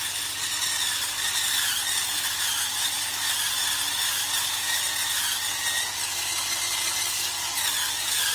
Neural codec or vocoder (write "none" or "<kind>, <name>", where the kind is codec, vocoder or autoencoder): none